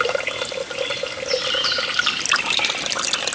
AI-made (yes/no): no